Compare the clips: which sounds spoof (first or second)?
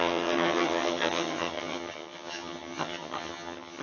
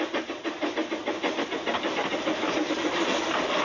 first